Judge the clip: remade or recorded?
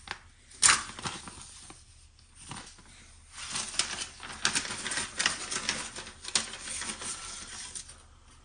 recorded